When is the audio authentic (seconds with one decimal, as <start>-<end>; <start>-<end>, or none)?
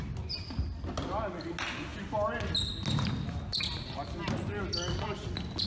0.0-5.7